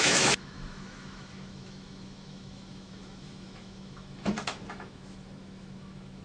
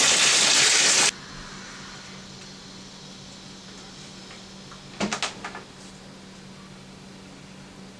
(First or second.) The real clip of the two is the second